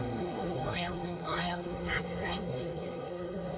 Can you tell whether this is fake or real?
fake